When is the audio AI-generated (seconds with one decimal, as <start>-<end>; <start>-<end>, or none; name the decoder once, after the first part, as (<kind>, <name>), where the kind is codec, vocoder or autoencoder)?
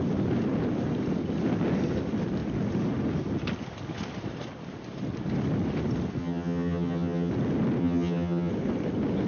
6.2-7.3 (vocoder, HiFi-GAN); 7.8-8.5